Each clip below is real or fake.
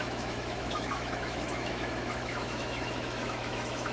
fake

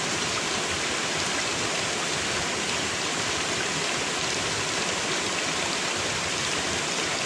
real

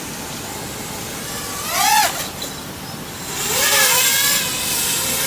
real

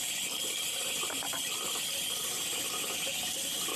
real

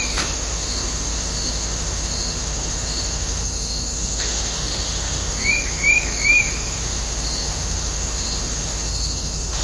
fake